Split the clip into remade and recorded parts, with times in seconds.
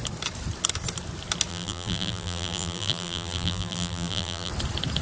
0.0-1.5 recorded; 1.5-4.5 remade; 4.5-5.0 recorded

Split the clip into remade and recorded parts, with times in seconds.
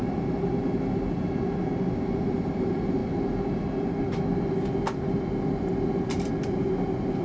0.0-0.5 remade; 0.5-2.3 recorded; 2.3-3.0 remade; 3.0-6.4 recorded; 6.4-7.2 remade